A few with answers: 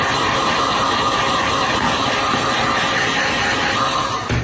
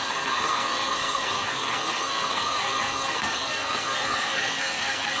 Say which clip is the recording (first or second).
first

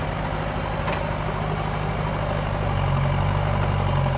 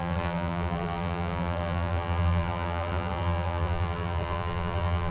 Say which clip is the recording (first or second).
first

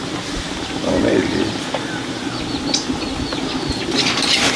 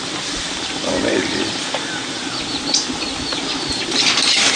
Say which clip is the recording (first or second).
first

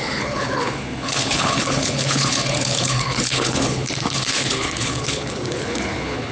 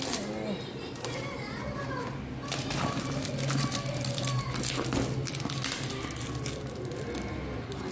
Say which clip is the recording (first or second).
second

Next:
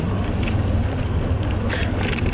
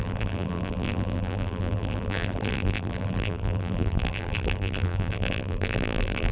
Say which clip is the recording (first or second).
first